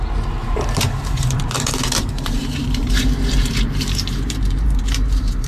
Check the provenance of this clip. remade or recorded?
remade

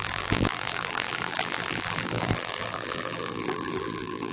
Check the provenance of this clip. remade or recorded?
remade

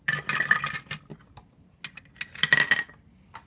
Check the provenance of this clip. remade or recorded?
recorded